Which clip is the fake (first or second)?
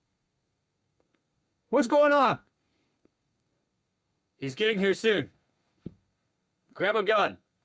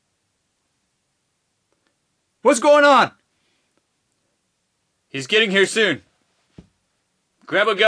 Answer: first